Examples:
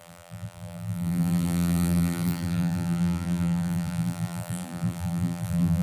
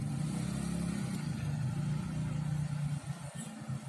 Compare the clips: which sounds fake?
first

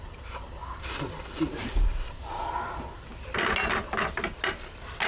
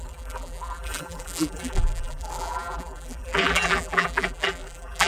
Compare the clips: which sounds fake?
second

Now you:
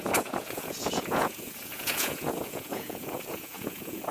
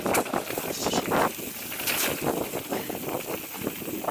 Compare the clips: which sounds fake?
first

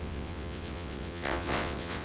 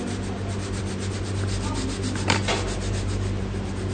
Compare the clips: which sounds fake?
first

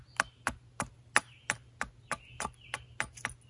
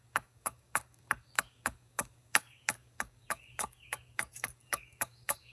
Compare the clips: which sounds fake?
second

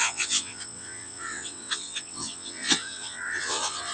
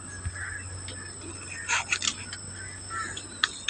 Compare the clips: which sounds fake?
first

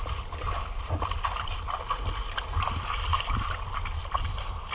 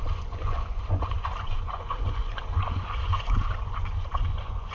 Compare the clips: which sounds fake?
second